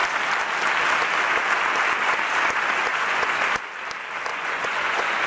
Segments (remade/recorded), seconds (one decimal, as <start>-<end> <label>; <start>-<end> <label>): 0.0-2.9 recorded; 2.9-3.4 remade; 3.4-4.3 recorded; 4.3-5.3 remade